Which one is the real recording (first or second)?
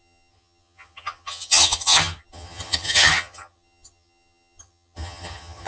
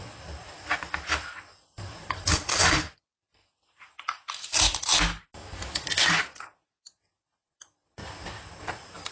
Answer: second